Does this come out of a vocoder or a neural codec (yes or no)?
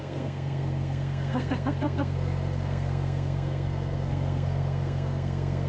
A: yes